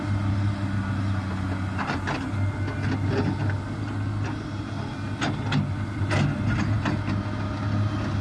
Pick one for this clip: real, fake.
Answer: real